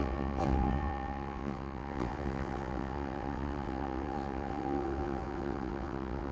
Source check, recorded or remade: remade